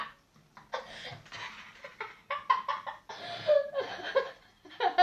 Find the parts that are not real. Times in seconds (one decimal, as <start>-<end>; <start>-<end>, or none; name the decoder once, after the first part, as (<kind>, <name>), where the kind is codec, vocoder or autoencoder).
none